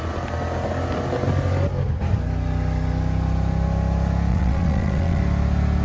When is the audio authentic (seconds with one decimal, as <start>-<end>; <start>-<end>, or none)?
0.0-4.3; 5.2-5.8